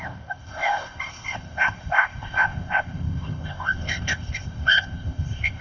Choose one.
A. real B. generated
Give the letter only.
B